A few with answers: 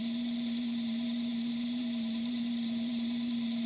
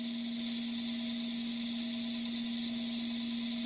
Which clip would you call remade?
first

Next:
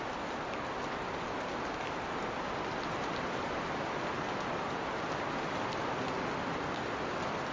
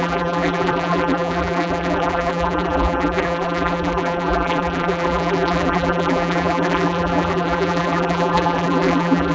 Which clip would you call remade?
second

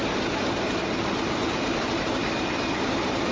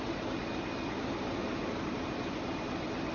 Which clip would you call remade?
first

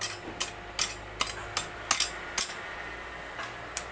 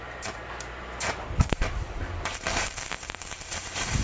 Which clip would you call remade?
second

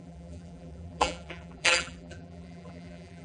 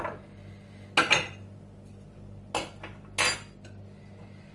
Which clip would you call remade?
first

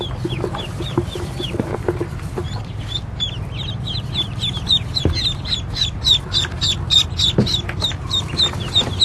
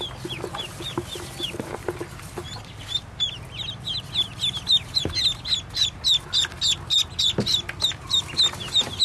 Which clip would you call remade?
first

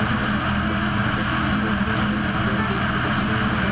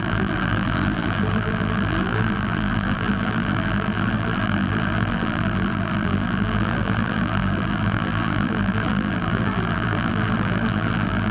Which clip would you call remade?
second